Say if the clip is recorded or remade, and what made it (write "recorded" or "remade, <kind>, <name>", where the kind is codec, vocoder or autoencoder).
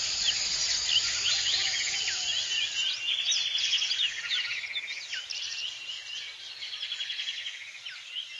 recorded